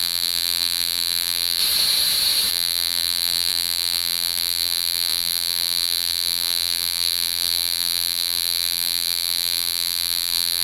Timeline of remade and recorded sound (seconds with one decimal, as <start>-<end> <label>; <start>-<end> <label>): 0.0-1.6 remade; 1.6-2.5 recorded; 2.5-10.6 remade